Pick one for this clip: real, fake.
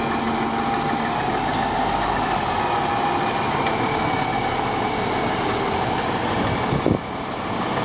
real